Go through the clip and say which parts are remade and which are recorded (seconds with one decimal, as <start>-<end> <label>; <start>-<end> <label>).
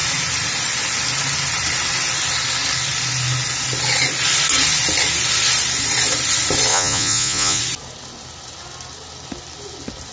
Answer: 0.0-6.7 recorded; 6.7-7.6 remade; 7.6-10.1 recorded